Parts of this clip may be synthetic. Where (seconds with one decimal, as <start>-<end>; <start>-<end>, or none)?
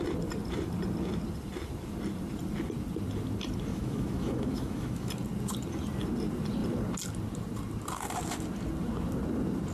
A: 3.7-5.1